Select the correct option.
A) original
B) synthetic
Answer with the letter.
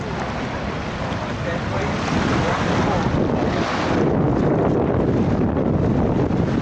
B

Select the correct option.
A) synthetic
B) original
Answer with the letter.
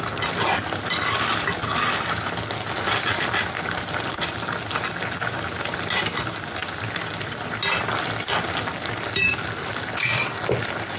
B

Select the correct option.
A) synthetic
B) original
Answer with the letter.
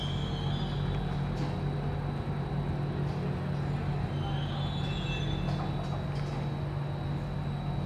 B